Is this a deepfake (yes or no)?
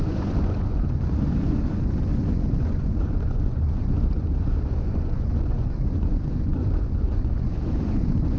yes